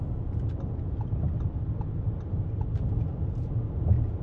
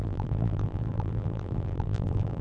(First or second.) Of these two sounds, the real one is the first